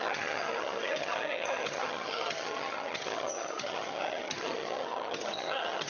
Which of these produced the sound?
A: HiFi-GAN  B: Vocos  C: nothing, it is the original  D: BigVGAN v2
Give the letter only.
A